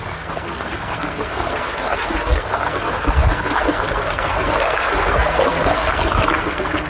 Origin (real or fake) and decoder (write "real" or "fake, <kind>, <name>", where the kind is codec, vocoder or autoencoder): fake, codec, SNAC